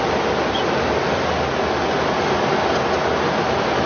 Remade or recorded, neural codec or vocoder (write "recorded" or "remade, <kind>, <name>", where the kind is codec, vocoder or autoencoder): recorded